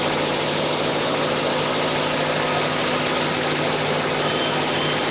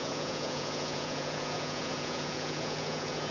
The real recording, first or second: first